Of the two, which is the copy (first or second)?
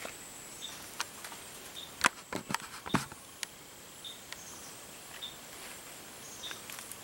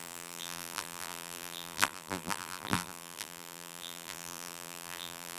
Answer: second